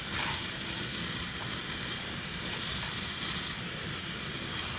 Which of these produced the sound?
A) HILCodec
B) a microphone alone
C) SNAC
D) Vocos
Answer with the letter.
B